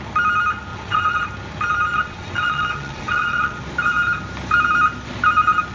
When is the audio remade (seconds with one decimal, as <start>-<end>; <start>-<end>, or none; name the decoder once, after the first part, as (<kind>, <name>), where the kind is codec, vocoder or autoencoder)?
0.7-1.2 (vocoder, WaveNeXt); 1.9-3.6

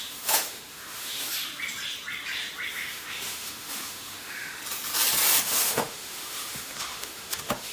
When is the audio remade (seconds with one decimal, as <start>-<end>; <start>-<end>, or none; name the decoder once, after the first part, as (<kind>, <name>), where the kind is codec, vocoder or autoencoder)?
0.0-1.5 (autoencoder, DAC-VAE); 2.7-4.6; 5.4-7.7

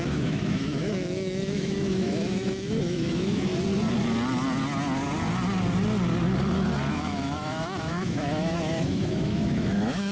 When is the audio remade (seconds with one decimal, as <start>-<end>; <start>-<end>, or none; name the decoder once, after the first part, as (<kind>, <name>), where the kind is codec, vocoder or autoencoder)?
0.0-3.5 (autoencoder, DAC-VAE); 6.9-10.1

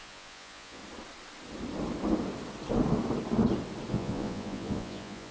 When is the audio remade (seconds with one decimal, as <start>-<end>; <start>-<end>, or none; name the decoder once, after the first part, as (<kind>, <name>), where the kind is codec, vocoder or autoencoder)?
0.0-0.8 (vocoder, Vocos); 3.9-5.3

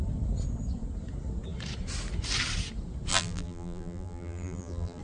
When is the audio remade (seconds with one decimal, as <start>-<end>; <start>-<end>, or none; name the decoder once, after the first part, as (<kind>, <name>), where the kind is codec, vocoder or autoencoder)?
3.1-5.0 (vocoder, BigVGAN v2)

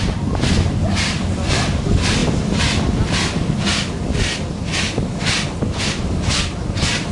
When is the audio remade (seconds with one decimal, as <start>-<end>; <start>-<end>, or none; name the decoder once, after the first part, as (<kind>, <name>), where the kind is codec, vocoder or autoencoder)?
none